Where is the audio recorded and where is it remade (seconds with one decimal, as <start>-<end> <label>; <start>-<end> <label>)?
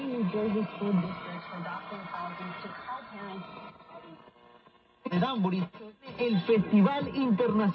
0.0-7.7 recorded